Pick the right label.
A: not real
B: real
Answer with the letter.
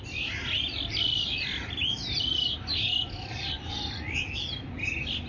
B